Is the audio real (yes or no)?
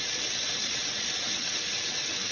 no